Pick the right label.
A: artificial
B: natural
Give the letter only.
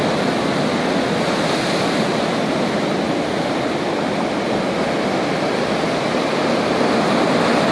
B